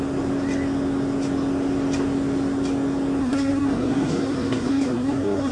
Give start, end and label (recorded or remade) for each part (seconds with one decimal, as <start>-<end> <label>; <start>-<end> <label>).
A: 0.0-3.2 recorded; 3.2-5.5 remade